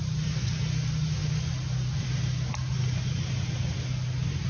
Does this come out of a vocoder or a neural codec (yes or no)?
no